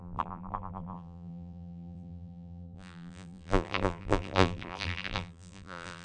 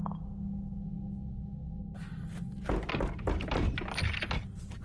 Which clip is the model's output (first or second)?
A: first